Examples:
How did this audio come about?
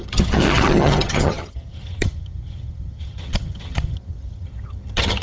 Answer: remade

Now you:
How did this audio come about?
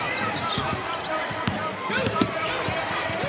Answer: remade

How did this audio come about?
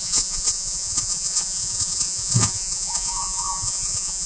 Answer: remade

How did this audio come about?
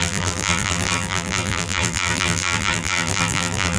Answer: remade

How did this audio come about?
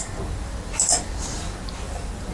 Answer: recorded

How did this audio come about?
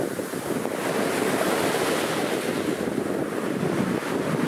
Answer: recorded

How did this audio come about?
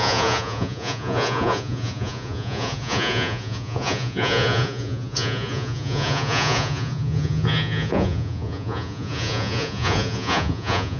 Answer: remade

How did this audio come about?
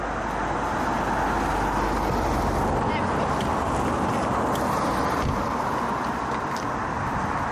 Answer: recorded